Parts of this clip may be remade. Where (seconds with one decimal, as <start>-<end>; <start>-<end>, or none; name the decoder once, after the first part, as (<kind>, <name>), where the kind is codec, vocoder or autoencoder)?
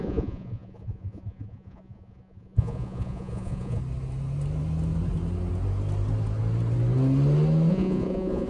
0.0-3.8 (vocoder, Vocos); 7.7-8.5